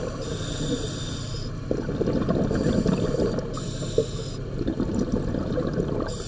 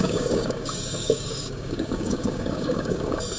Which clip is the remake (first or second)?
second